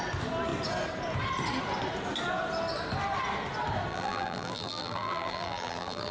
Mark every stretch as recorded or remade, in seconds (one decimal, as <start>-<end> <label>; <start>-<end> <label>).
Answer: 0.0-3.9 recorded; 3.9-6.1 remade